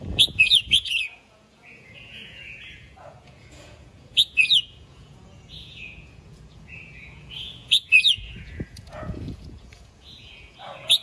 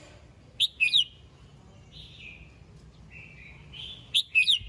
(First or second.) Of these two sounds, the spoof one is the first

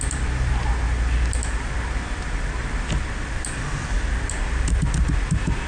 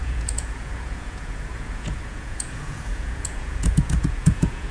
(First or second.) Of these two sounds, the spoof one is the second